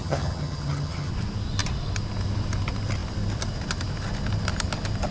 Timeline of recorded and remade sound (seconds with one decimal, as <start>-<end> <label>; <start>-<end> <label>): 0.0-1.1 remade; 1.1-5.1 recorded